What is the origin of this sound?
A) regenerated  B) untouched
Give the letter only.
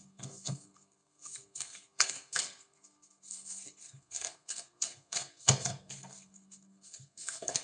A